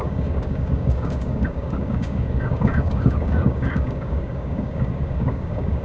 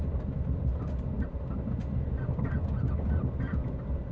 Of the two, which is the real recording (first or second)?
second